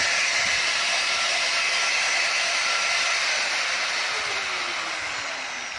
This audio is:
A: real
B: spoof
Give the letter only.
A